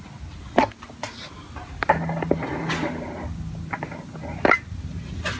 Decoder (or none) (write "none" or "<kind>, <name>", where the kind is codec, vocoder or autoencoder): none